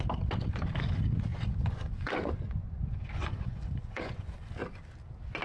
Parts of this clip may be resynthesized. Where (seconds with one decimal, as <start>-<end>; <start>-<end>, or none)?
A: 1.3-4.5